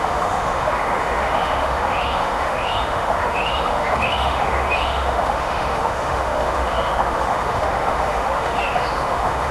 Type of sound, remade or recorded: remade